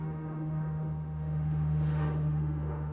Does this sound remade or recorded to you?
remade